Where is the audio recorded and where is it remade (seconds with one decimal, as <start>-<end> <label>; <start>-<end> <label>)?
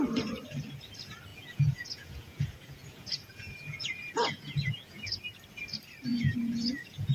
0.0-1.3 recorded; 1.3-5.2 remade; 5.2-6.1 recorded; 6.1-7.1 remade